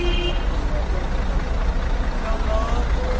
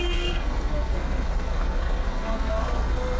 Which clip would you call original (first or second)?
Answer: first